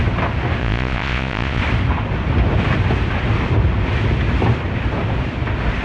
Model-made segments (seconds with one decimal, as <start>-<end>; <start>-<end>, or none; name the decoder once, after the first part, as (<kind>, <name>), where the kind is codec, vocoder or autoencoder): 0.6-1.6 (vocoder, Vocos)